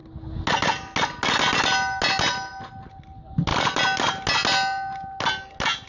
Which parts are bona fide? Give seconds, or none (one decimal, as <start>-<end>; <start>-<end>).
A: 0.0-5.9